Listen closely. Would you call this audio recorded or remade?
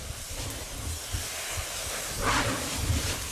remade